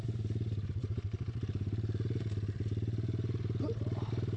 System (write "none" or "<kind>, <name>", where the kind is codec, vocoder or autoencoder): vocoder, BigVGAN v2